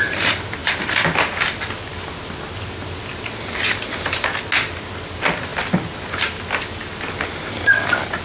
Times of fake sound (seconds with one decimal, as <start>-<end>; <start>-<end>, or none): none